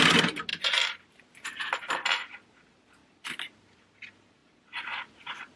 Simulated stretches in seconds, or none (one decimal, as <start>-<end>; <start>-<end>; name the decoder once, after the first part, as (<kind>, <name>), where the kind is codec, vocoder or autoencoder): 0.5-1.5 (vocoder, BigVGAN v2); 3.0-3.6; 4.4-5.6